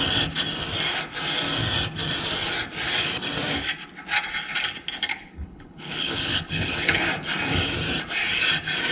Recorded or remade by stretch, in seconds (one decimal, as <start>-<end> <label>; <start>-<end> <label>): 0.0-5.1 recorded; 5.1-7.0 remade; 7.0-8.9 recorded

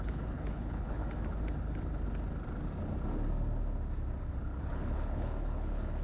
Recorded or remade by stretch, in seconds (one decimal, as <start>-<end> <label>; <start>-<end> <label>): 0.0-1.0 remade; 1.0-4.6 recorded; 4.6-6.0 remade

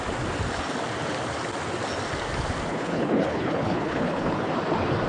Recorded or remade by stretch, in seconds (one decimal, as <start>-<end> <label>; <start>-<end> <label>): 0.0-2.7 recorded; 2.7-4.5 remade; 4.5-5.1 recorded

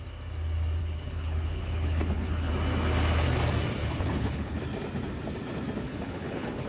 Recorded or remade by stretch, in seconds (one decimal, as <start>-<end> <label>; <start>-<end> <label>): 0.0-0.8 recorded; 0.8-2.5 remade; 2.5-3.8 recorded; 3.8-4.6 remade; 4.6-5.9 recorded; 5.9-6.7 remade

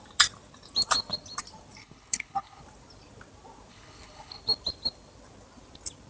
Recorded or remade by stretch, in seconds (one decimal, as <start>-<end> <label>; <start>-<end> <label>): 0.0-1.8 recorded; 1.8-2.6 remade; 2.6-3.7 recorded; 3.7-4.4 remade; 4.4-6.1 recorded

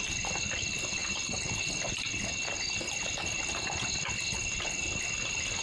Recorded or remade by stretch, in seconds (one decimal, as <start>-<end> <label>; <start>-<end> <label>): 0.0-5.6 recorded

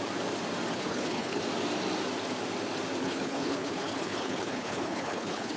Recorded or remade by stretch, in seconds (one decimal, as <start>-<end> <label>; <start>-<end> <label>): 0.0-0.7 recorded; 0.7-1.4 remade; 1.4-3.0 recorded; 3.0-5.6 remade